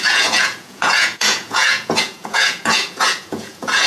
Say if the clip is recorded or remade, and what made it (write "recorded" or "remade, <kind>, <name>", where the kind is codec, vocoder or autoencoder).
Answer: remade, vocoder, Vocos